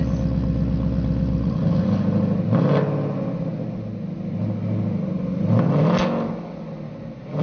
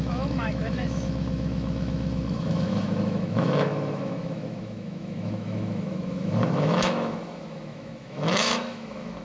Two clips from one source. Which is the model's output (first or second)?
second